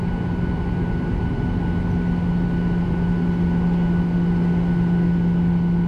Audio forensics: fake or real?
real